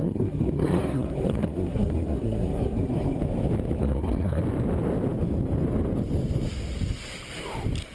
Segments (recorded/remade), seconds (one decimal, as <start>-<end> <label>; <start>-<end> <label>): 0.0-3.2 remade; 3.2-3.8 recorded; 3.8-4.4 remade; 4.4-7.9 recorded